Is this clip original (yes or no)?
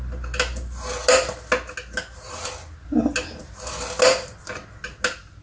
yes